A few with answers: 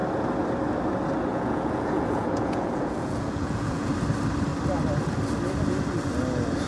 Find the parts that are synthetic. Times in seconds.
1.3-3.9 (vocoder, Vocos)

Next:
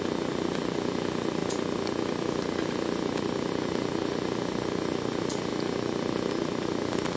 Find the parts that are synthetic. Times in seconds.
none

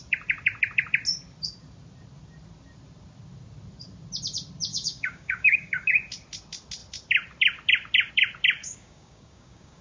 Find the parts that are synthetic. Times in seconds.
4.7-5.9 (codec, DAC); 8.6-9.8

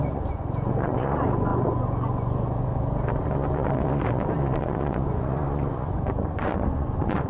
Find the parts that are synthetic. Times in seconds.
0.0-7.3 (vocoder, Vocos)

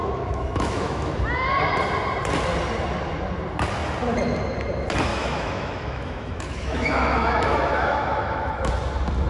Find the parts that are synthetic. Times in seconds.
0.0-1.1 (autoencoder, DAC-VAE); 5.1-8.7